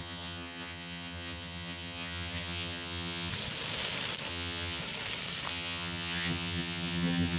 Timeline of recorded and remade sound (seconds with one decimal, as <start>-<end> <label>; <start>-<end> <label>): 0.0-3.3 remade; 3.3-4.3 recorded; 4.3-4.8 remade; 4.8-5.5 recorded; 5.5-7.4 remade